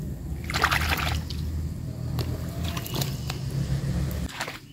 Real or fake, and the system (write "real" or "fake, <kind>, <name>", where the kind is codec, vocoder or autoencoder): real